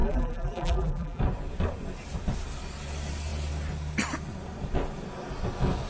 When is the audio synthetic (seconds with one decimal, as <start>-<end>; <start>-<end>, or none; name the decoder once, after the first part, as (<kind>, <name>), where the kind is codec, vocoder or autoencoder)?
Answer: 0.0-1.2 (vocoder, BigVGAN v2)